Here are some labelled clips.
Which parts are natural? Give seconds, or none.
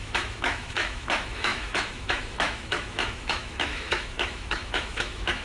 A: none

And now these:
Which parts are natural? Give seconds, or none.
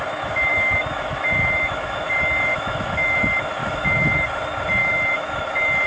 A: 0.0-0.5; 2.0-2.5; 3.2-3.6; 4.2-4.8; 5.5-5.9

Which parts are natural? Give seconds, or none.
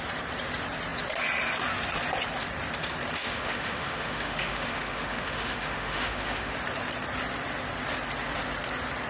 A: 0.0-3.2; 6.5-9.1